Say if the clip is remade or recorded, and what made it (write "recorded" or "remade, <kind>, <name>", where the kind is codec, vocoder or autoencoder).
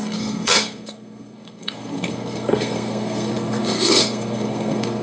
remade, codec, SNAC